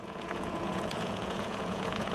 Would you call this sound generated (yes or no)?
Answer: yes